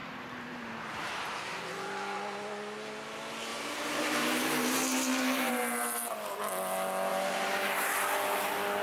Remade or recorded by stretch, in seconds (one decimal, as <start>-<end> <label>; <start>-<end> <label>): 0.0-1.6 remade; 1.6-3.5 recorded; 3.5-5.5 remade; 5.5-7.1 recorded; 7.1-7.9 remade; 7.9-8.8 recorded